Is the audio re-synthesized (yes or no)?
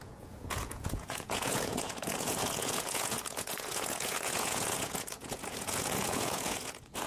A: yes